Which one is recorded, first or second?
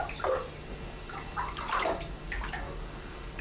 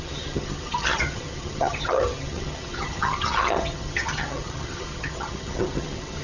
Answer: first